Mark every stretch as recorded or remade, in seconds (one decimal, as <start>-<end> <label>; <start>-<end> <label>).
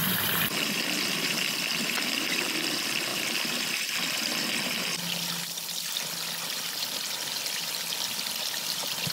0.0-2.4 remade; 2.4-3.1 recorded; 3.1-4.8 remade; 4.8-9.1 recorded